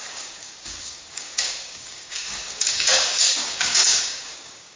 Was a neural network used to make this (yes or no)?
yes